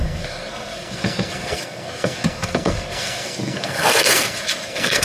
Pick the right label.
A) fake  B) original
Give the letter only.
A